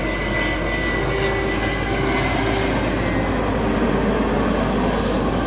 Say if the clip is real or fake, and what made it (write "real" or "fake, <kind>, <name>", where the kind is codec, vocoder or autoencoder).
real